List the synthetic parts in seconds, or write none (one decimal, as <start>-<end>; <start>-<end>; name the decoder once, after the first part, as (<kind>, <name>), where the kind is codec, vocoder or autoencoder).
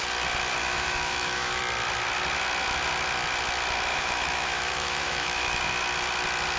0.6-1.6 (autoencoder, DAC-VAE); 3.9-5.6